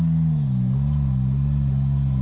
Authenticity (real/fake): real